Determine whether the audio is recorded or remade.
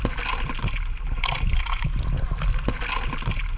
recorded